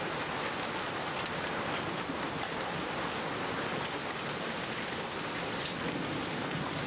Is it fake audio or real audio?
real